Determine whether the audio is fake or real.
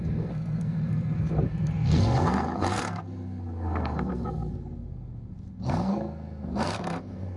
fake